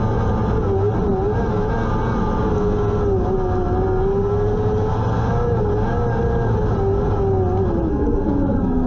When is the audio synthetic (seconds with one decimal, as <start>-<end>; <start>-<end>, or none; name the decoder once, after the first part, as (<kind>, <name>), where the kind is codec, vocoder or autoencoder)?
7.9-8.9 (codec, SNAC)